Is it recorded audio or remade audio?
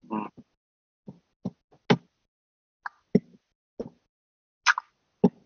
recorded